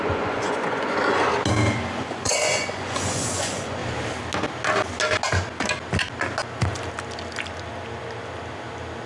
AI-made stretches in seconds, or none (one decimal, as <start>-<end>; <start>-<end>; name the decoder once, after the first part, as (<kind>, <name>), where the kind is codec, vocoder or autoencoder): 0.0-1.3 (vocoder, Vocos); 2.0-3.8

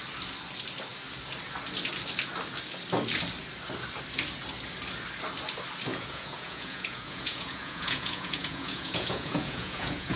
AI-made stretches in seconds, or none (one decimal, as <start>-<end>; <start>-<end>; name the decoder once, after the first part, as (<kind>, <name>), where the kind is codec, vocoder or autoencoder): 5.9-10.2 (vocoder, Vocos)

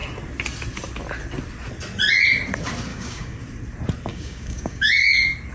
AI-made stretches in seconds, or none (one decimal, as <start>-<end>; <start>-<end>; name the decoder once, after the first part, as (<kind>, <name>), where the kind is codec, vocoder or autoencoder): 2.9-3.4 (codec, DAC); 4.1-4.9

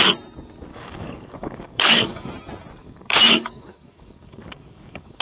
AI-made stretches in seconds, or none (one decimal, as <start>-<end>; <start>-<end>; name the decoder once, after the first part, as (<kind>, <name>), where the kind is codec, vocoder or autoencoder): 0.7-2.3 (codec, DAC); 2.8-5.2

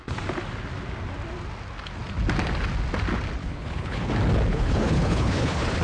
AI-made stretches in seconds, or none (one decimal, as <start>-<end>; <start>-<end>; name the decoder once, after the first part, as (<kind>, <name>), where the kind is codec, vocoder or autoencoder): 3.4-4.1 (codec, HILCodec); 4.5-5.8

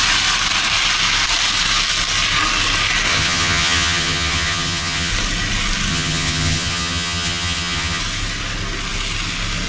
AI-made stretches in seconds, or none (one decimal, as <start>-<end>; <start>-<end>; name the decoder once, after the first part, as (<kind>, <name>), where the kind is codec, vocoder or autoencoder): 3.1-5.1 (vocoder, HiFi-GAN); 5.9-8.0

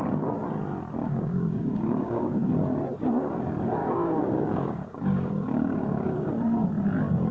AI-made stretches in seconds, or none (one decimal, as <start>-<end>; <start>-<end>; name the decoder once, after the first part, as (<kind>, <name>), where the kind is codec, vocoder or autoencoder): 1.0-2.3 (codec, DAC); 3.8-6.3

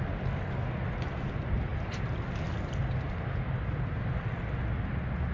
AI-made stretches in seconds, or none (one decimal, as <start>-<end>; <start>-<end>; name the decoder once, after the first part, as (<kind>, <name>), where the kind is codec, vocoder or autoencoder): none